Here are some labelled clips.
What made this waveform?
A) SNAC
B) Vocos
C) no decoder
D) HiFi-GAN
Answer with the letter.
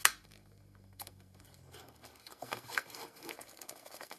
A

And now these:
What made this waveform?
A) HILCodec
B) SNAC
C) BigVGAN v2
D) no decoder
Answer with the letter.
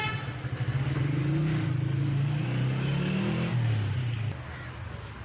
D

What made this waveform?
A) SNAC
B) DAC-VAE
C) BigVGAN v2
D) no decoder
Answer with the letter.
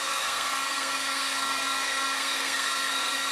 A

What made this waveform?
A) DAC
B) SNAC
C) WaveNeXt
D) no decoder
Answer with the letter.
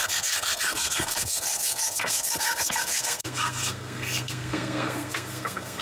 B